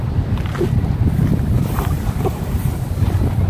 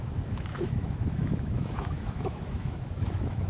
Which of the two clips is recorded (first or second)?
first